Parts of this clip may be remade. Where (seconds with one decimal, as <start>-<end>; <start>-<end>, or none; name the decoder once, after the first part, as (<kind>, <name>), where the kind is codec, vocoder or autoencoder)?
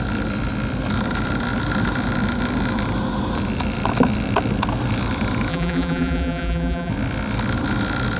5.5-6.9 (vocoder, BigVGAN v2)